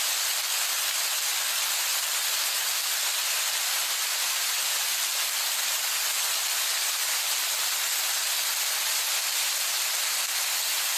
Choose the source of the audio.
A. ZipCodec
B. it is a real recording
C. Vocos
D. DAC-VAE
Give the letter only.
B